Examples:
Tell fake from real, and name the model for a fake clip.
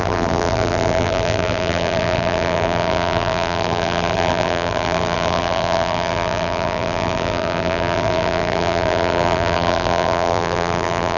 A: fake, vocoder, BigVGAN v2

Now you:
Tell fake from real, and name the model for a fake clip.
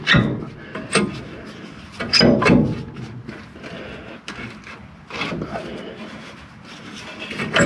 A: real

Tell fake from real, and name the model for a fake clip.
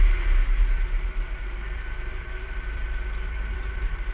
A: real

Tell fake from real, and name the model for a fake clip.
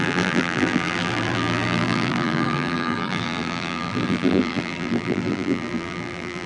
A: fake, vocoder, BigVGAN v2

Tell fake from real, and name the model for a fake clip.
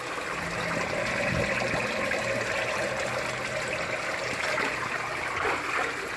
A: real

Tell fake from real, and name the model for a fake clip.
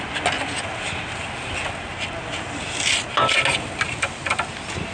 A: real